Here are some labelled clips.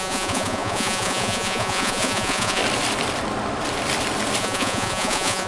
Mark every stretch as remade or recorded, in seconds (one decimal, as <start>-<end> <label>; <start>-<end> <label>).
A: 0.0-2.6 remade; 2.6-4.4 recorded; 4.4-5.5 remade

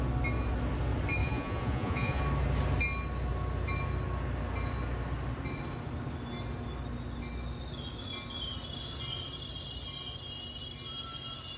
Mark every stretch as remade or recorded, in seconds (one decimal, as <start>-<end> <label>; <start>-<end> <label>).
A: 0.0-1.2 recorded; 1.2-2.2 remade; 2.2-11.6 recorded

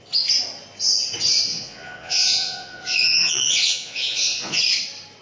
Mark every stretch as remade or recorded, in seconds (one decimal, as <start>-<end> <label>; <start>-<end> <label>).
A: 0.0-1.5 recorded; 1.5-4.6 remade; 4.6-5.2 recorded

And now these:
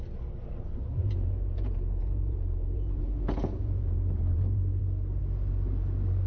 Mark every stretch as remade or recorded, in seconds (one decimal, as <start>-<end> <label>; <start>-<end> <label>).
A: 0.0-1.0 recorded; 1.0-4.8 remade; 4.8-6.3 recorded